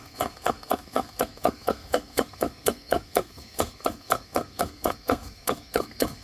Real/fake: fake